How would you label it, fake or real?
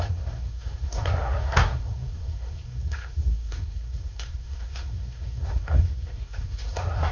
fake